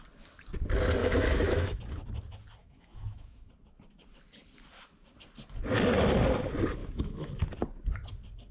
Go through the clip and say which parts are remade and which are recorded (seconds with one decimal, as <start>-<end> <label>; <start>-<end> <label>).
0.0-1.0 recorded; 1.0-1.8 remade; 1.8-2.6 recorded; 2.6-3.5 remade; 3.5-6.8 recorded; 6.8-7.3 remade; 7.3-8.5 recorded